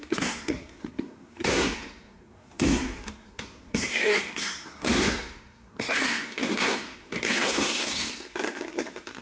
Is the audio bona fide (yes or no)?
no